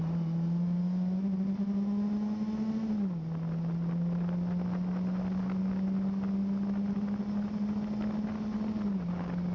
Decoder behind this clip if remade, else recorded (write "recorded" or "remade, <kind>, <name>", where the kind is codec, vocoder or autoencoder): recorded